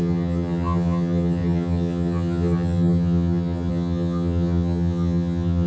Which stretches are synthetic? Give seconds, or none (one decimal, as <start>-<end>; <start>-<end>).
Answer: 0.0-5.7